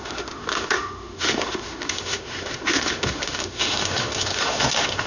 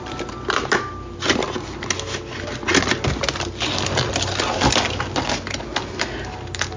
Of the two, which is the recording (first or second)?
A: second